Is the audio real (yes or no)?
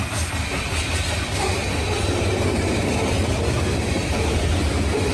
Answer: yes